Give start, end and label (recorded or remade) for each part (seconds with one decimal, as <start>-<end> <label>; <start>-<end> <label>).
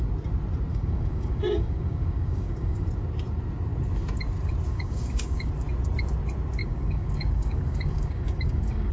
0.0-0.7 recorded; 0.7-2.9 remade; 2.9-4.7 recorded; 4.7-5.5 remade; 5.5-6.6 recorded; 6.6-8.9 remade